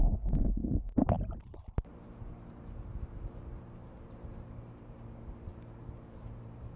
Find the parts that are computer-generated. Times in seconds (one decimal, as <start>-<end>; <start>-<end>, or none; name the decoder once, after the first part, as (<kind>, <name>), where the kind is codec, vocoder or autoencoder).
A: 0.0-6.8 (vocoder, BigVGAN v2)